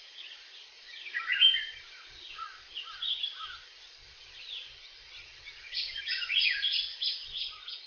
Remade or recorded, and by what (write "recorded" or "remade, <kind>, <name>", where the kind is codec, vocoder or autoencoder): remade, vocoder, Vocos